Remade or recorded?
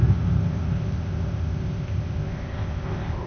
remade